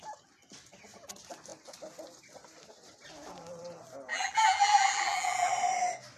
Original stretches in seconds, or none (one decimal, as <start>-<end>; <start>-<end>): 0.0-4.1; 5.5-6.2